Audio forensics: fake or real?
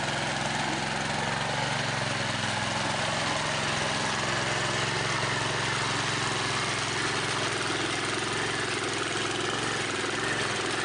real